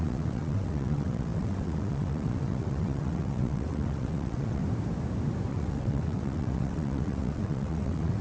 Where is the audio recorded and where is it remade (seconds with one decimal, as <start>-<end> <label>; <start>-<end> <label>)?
0.0-4.6 remade; 4.6-5.5 recorded; 5.5-8.2 remade